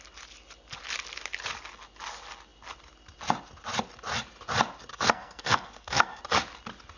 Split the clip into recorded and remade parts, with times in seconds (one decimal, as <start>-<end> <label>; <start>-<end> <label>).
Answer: 0.0-4.9 recorded; 4.9-6.2 remade; 6.2-7.0 recorded